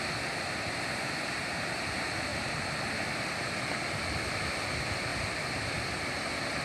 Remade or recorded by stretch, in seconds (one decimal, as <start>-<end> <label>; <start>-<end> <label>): 0.0-2.3 recorded; 2.3-2.9 remade; 2.9-6.6 recorded